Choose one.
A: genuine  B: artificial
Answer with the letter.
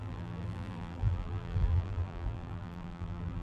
B